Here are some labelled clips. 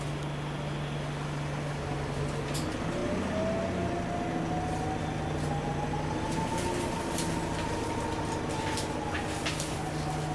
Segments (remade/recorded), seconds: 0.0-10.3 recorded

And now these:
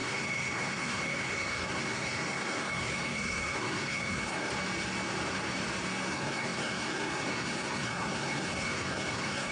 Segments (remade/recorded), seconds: 0.0-4.5 remade; 4.5-6.1 recorded; 6.1-9.5 remade

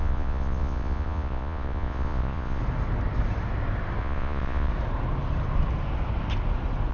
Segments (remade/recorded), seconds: 0.0-2.6 remade; 2.6-4.0 recorded; 4.0-4.7 remade; 4.7-6.9 recorded